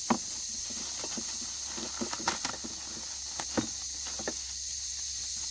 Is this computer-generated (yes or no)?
no